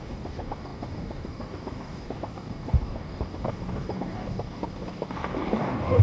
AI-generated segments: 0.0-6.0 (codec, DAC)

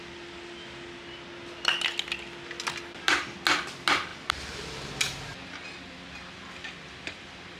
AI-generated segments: none